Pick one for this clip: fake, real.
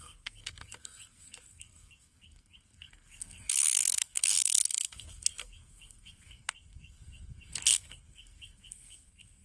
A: fake